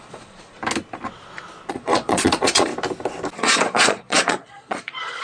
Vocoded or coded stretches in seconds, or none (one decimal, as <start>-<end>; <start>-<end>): 0.0-0.6; 1.7-2.7; 3.4-5.2

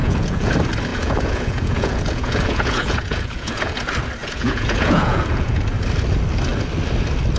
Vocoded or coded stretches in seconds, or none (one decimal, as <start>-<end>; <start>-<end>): 0.0-0.5; 0.9-3.8; 4.2-5.6